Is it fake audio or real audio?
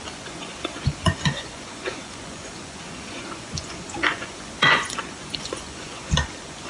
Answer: fake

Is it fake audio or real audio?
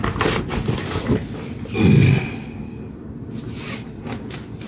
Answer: real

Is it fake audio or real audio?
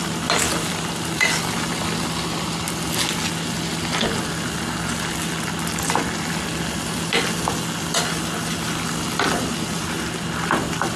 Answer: real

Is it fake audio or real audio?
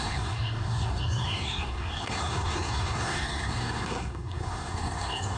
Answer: fake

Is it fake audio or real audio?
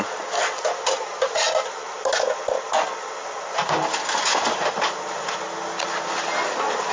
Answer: real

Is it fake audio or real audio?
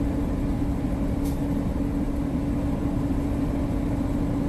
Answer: real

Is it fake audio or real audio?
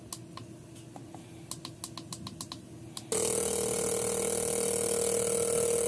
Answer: real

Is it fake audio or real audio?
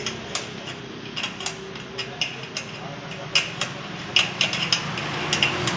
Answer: real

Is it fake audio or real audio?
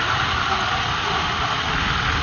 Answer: real